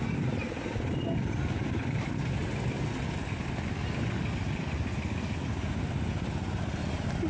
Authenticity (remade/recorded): recorded